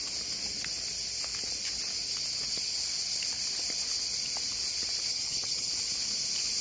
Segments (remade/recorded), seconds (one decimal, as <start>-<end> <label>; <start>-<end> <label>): 0.0-5.1 recorded; 5.1-5.7 remade; 5.7-6.6 recorded